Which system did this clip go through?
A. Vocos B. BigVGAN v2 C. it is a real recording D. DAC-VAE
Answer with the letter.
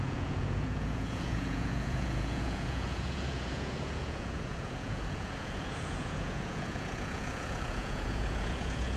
A